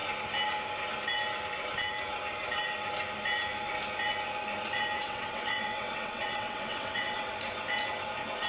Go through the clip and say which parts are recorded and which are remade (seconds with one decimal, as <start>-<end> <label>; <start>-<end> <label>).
0.0-5.0 recorded; 5.0-7.3 remade; 7.3-8.5 recorded